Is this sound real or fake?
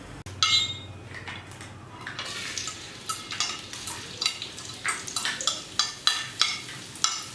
real